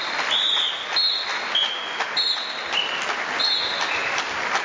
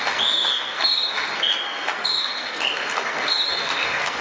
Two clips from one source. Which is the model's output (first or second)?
second